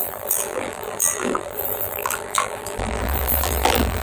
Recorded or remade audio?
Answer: remade